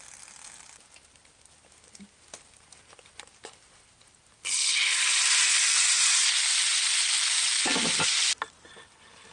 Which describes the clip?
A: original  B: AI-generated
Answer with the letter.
A